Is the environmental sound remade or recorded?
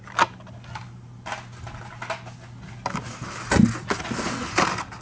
recorded